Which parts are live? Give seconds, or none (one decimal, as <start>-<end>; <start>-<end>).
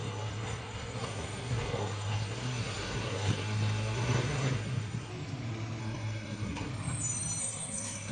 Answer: 5.1-5.8; 6.7-7.4